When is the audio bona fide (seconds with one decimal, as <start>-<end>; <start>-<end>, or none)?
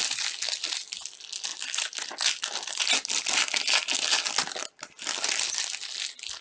0.0-6.4